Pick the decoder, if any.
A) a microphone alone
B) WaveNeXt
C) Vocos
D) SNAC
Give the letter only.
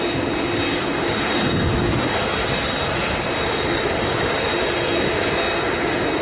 A